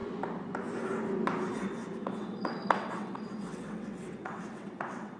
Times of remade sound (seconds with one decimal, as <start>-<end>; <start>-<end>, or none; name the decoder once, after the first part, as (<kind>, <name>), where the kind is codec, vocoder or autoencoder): 2.0-5.2 (vocoder, WaveNeXt)

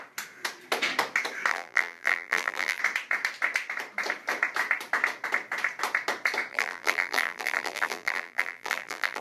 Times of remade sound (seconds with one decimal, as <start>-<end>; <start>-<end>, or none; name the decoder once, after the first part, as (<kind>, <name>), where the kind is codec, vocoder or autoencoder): 1.5-2.8 (vocoder, BigVGAN v2); 6.5-9.2

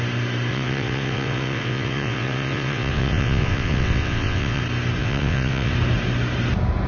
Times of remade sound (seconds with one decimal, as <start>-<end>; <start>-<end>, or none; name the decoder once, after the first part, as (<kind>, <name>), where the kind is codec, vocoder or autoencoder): 0.5-4.6 (vocoder, WaveNeXt); 5.0-5.7

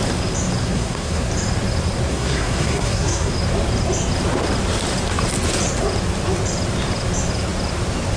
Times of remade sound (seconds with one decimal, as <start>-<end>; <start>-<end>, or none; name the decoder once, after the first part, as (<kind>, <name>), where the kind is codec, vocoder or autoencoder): 0.6-1.3 (codec, SNAC); 2.1-3.3

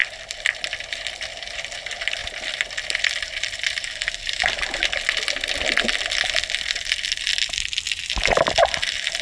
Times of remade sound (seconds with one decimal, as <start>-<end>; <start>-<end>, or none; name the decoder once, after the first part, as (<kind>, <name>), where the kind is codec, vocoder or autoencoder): none

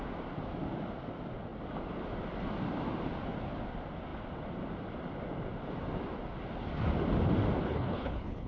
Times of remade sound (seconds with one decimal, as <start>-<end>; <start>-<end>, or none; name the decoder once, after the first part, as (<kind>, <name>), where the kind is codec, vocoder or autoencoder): 7.6-8.5 (codec, HILCodec)

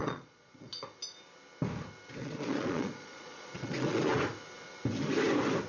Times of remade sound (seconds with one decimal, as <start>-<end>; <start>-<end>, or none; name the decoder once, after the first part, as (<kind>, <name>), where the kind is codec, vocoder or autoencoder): 0.0-0.7 (vocoder, Vocos); 2.2-4.1